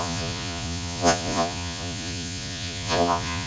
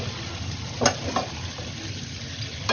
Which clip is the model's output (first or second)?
first